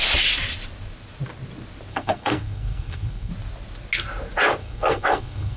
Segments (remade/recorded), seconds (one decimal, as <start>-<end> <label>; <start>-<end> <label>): 0.0-1.9 recorded; 1.9-3.3 remade; 3.3-4.6 recorded; 4.6-5.6 remade